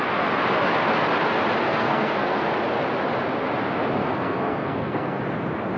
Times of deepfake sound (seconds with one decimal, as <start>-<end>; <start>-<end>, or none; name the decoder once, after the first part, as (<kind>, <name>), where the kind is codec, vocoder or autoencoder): 1.7-2.5 (codec, SNAC); 4.0-5.2